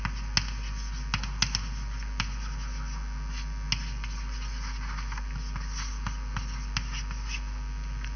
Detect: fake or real real